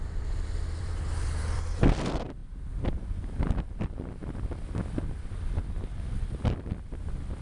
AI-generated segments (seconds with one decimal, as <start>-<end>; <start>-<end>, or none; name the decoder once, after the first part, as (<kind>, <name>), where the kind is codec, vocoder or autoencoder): 0.0-4.2 (vocoder, BigVGAN v2); 4.7-7.4